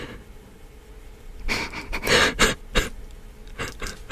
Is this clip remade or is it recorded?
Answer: recorded